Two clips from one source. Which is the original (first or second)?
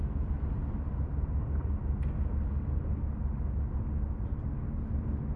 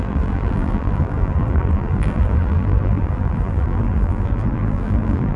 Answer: first